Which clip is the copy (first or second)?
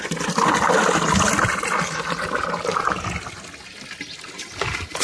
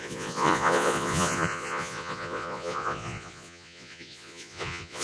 second